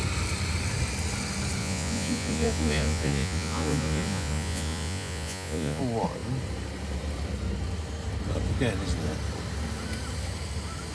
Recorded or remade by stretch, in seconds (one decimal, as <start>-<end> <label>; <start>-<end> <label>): 0.0-1.6 recorded; 1.6-5.8 remade; 5.8-10.9 recorded